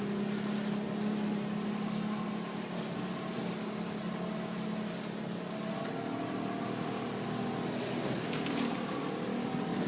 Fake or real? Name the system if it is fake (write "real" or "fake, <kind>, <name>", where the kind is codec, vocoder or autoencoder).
real